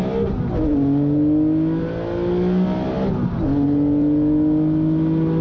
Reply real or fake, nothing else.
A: real